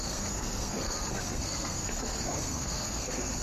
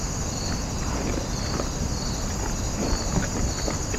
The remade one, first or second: first